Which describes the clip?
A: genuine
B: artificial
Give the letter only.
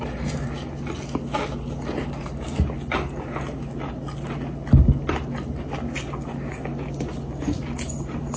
A